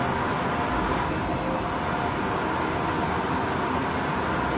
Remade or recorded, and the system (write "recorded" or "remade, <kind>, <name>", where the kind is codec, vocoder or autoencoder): recorded